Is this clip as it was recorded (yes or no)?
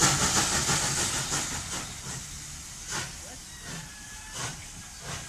yes